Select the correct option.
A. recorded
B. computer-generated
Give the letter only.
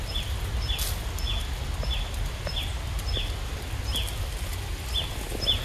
A